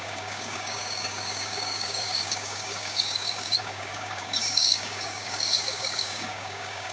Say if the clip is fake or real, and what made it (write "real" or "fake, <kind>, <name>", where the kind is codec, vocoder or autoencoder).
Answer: fake, codec, DAC